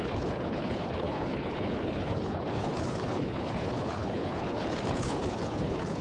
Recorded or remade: remade